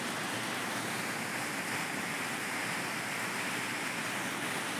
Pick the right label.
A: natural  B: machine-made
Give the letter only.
A